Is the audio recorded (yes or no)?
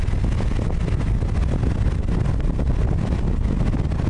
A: yes